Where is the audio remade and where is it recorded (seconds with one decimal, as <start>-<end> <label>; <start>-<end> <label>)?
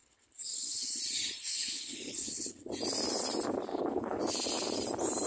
0.0-1.0 remade; 1.0-1.5 recorded; 1.5-2.7 remade; 2.7-3.7 recorded; 3.7-4.2 remade; 4.2-5.3 recorded